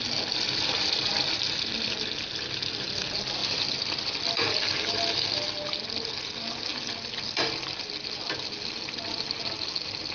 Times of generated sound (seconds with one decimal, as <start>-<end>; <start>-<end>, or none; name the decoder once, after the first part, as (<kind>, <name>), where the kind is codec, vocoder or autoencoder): none